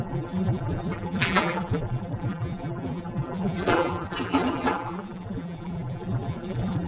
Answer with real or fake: fake